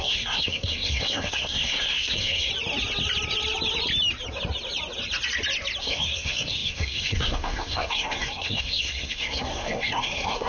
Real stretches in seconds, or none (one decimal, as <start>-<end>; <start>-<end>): 2.5-5.8